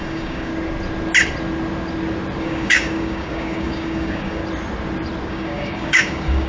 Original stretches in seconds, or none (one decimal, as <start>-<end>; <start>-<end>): 0.5-2.4; 4.4-5.3